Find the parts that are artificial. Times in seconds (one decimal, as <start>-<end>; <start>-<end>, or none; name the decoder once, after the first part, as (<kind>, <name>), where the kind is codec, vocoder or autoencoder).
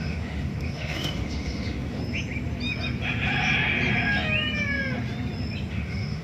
0.0-2.0 (autoencoder, DAC-VAE); 5.7-6.2